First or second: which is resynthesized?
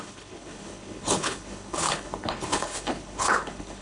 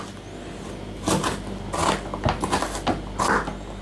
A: first